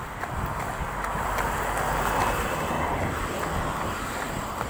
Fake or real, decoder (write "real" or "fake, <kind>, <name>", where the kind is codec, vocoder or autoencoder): real